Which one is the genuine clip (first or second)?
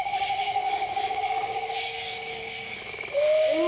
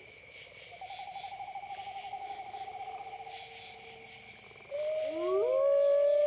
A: second